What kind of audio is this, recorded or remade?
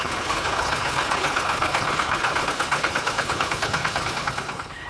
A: remade